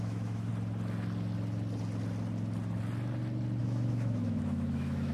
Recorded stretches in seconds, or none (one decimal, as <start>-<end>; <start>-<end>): 0.5-3.6